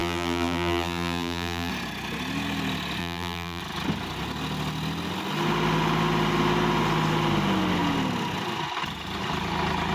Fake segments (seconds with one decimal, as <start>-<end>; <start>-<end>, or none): 0.0-1.7; 3.0-3.6